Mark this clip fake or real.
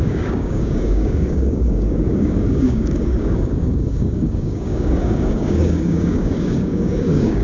fake